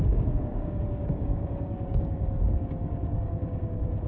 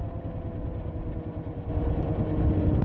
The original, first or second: second